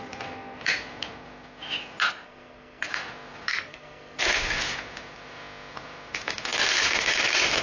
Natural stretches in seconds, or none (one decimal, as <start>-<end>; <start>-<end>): 0.0-2.1; 2.9-3.5; 4.2-7.6